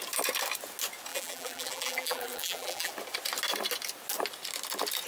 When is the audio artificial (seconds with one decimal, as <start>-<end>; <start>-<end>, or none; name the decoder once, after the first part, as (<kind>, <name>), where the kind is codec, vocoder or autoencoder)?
1.1-2.9 (vocoder, BigVGAN v2)